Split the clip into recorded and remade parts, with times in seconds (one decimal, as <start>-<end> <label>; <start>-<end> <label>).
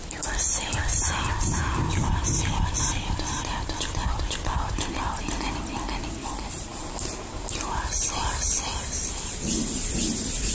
0.0-6.7 remade; 6.7-8.0 recorded; 8.0-10.5 remade